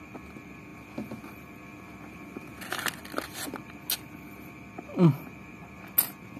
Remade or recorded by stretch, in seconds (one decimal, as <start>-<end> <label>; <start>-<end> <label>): 0.0-6.4 recorded